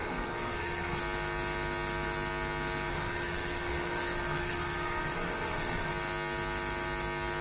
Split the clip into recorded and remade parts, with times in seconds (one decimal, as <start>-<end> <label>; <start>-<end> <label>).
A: 0.0-1.0 remade; 1.0-2.9 recorded; 2.9-5.9 remade; 5.9-7.4 recorded